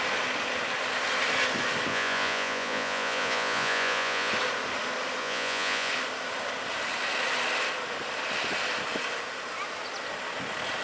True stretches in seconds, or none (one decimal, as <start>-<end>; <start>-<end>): 0.0-1.9; 4.3-5.2; 5.9-10.8